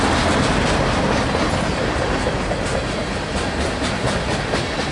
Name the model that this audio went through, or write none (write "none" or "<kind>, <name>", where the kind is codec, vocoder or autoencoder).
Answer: none